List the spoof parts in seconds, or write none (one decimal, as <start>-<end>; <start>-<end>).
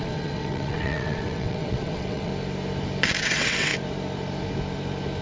0.0-2.3; 3.2-3.7